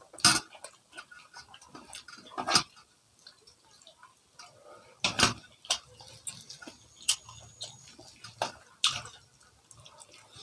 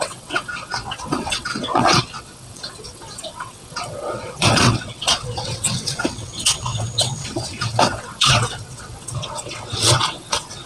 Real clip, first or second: first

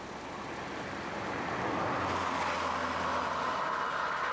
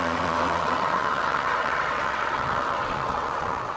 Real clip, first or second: first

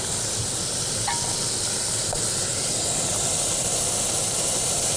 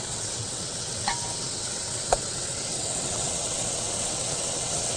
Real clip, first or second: first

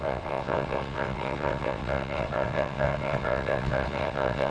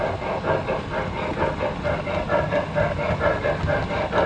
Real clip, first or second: second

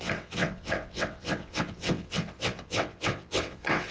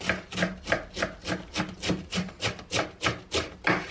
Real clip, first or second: second